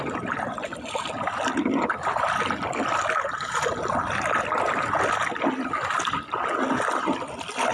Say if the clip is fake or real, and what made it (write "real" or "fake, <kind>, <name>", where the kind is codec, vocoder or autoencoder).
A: real